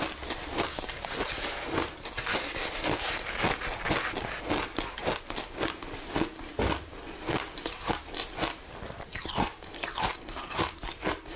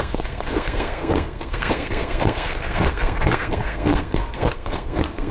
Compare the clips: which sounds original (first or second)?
first